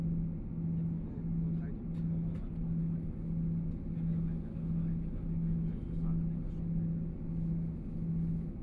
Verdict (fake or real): real